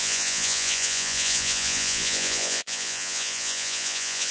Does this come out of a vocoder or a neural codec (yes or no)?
yes